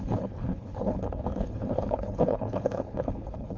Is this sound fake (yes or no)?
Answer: yes